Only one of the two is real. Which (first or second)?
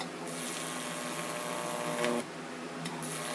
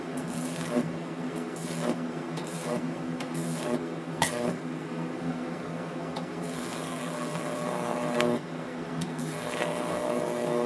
first